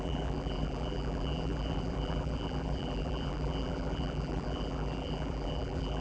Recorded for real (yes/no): no